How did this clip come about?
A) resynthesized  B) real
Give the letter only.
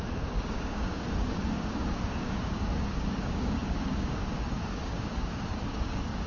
A